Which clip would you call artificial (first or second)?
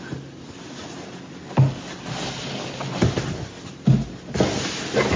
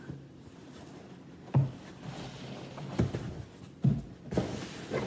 second